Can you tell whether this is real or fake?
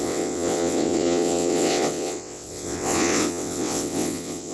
fake